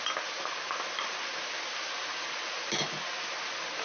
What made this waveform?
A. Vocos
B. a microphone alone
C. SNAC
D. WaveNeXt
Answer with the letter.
B